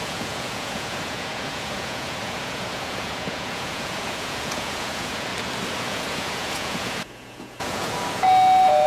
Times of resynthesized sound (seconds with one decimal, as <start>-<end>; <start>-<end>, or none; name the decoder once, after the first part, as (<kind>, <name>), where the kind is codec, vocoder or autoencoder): 0.0-5.3 (vocoder, Vocos); 5.8-8.9